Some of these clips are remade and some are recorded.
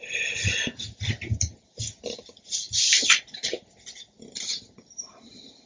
recorded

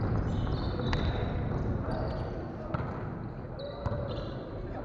recorded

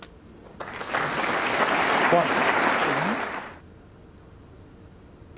recorded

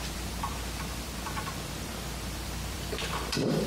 remade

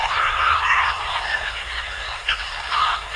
remade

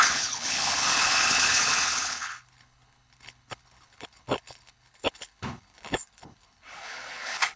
remade